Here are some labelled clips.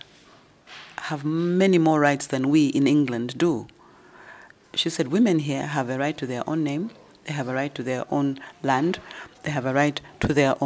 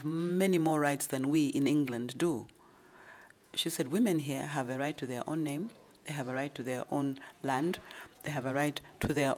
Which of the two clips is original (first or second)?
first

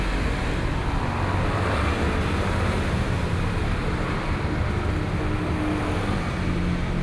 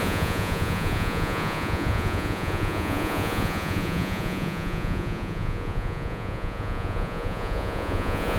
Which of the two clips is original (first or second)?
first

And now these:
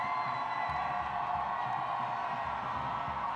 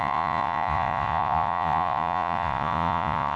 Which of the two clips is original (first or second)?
first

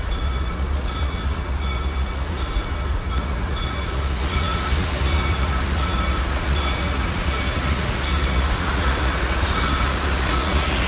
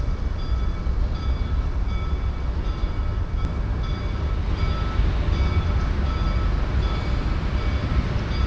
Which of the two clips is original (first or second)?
second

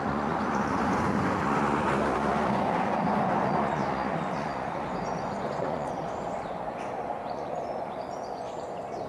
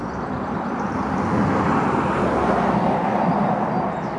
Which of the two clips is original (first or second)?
second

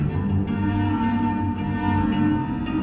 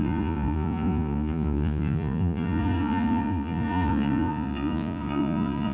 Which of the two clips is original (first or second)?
first